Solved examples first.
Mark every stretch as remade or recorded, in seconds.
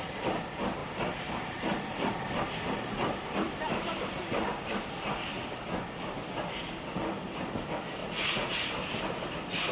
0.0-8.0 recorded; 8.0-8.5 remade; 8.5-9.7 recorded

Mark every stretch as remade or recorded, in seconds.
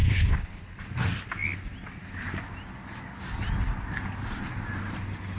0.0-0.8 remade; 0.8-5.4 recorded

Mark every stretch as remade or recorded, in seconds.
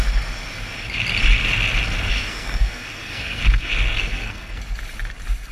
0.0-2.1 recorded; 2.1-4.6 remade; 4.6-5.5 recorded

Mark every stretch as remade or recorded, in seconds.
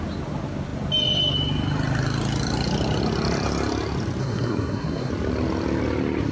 0.0-4.2 recorded; 4.2-5.1 remade; 5.1-6.3 recorded